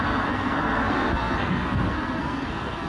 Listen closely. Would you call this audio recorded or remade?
remade